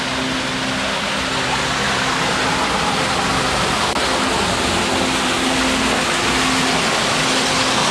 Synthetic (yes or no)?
no